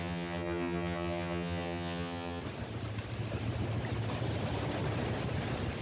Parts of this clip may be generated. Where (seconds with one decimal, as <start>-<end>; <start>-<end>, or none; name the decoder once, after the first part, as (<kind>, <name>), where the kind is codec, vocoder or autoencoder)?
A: 0.0-2.4 (vocoder, HiFi-GAN)